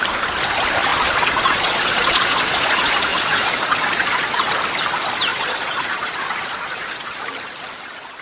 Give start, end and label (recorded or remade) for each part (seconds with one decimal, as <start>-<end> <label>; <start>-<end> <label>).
0.0-0.9 recorded; 0.9-4.5 remade; 4.5-5.3 recorded; 5.3-7.2 remade; 7.2-8.2 recorded